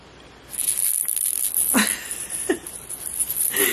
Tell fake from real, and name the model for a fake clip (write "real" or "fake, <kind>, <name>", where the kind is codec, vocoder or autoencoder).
real